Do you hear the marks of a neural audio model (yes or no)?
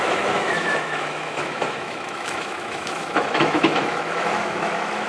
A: yes